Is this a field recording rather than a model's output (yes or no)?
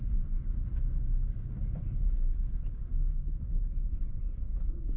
yes